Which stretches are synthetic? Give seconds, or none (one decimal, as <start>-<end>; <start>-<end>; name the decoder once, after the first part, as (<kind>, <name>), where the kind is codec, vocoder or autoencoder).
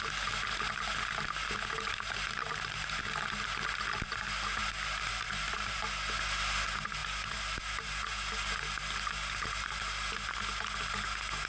2.4-3.0 (vocoder, BigVGAN v2); 4.6-5.8; 7.0-8.0